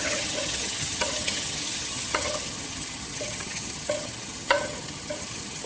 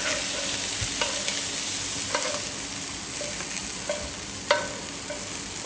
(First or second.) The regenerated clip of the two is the first